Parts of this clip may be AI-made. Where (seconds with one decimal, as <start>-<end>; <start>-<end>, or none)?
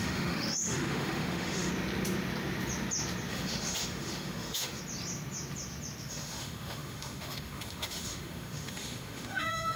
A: 0.0-1.7; 3.3-4.8; 6.1-9.8